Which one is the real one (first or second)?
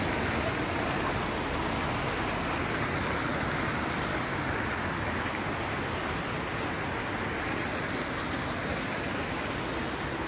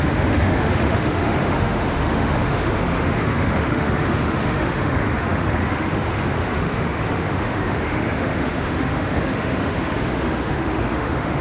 first